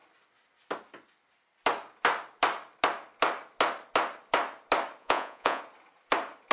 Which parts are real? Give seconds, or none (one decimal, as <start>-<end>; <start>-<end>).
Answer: 0.0-5.0; 5.6-6.5